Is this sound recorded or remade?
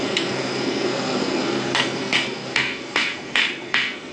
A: remade